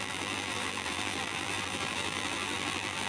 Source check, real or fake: fake